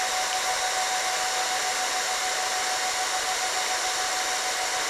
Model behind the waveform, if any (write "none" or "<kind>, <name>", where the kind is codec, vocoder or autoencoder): none